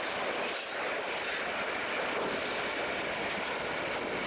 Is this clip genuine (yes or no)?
yes